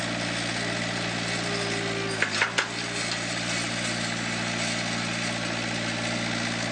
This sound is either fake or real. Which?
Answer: real